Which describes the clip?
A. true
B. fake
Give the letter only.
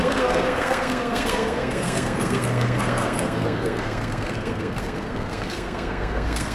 B